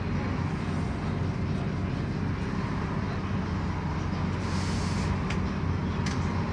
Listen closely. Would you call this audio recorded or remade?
recorded